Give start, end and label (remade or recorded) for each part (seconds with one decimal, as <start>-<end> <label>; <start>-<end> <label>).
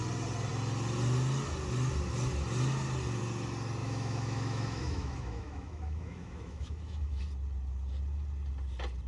0.0-3.8 recorded; 3.8-7.2 remade; 7.2-9.1 recorded